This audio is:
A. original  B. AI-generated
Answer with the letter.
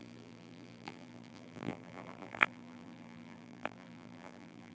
B